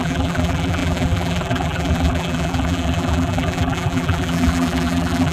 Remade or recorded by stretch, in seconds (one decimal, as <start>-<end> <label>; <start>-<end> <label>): 0.0-5.3 remade